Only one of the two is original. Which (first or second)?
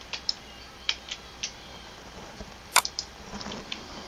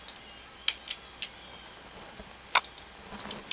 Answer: second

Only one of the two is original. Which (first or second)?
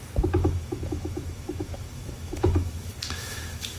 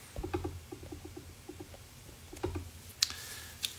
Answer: second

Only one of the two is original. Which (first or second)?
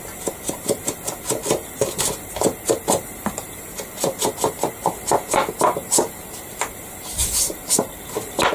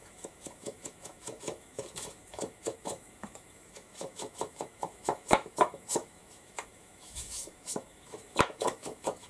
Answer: first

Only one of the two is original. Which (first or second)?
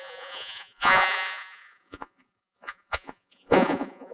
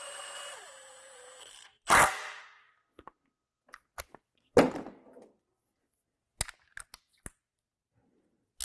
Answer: second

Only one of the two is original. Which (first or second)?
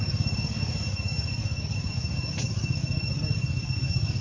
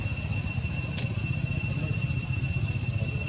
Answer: second